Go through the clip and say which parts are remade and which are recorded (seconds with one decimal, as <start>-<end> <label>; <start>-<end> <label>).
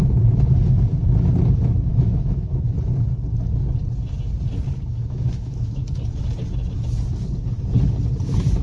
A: 0.0-1.9 recorded; 1.9-2.5 remade; 2.5-4.9 recorded; 4.9-6.0 remade; 6.0-8.6 recorded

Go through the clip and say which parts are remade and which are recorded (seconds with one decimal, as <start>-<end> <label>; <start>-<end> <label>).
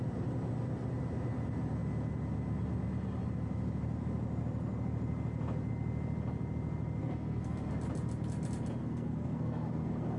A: 0.0-7.0 recorded; 7.0-7.7 remade; 7.7-8.8 recorded; 8.8-10.2 remade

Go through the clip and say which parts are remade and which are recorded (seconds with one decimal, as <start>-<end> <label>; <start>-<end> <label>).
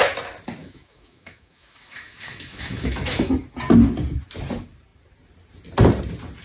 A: 0.0-0.6 recorded; 0.6-3.3 remade; 3.3-6.4 recorded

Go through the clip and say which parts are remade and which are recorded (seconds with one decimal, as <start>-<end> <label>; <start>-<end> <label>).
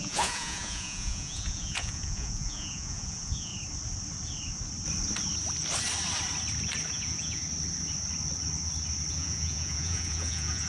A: 0.0-3.5 remade; 3.5-6.9 recorded; 6.9-7.4 remade; 7.4-9.1 recorded; 9.1-10.7 remade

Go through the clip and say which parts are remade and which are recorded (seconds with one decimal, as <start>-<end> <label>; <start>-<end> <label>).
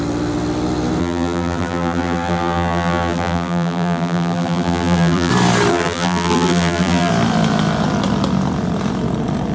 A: 0.0-1.0 recorded; 1.0-5.3 remade; 5.3-5.7 recorded; 5.7-7.1 remade; 7.1-9.5 recorded